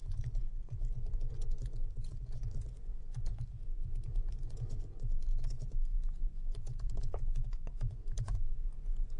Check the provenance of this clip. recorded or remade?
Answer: remade